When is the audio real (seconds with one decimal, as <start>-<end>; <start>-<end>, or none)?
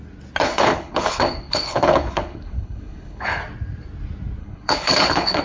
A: 0.0-0.4; 3.4-4.4